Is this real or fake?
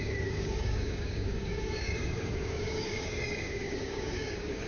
fake